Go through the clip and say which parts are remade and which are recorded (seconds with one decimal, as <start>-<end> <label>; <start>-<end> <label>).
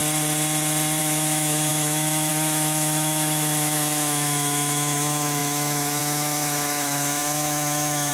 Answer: 0.0-1.0 recorded; 1.0-8.1 remade